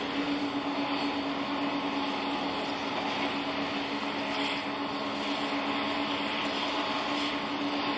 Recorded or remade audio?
recorded